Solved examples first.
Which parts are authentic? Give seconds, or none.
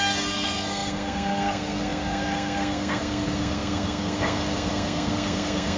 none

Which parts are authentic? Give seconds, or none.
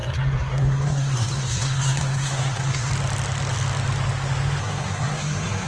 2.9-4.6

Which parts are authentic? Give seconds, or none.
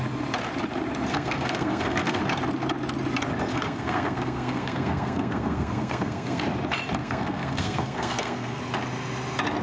0.0-1.1; 2.2-3.5; 6.4-7.0; 8.6-9.6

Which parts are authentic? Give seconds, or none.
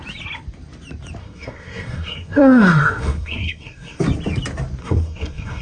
0.0-1.2; 4.0-4.8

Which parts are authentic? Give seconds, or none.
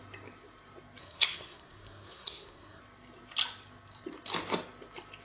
0.0-1.0; 2.8-5.2